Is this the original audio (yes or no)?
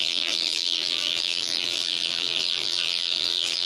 no